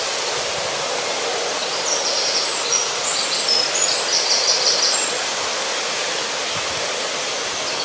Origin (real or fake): real